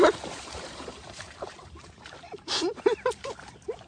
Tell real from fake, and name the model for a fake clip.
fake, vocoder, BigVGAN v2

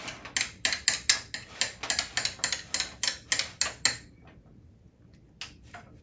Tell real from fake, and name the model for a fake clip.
real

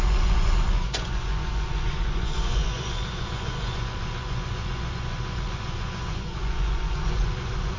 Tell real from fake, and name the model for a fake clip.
fake, vocoder, Vocos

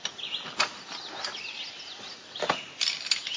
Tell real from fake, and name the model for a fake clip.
real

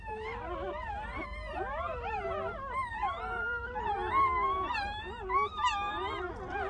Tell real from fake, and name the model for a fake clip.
real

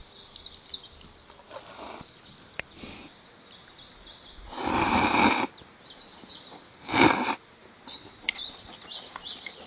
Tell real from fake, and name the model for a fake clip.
real